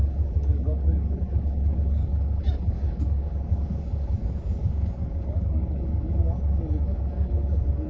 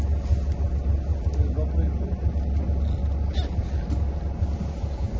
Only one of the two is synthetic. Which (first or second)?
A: first